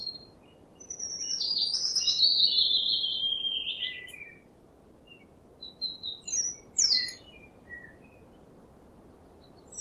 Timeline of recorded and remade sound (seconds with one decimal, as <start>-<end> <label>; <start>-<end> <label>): 0.0-9.8 recorded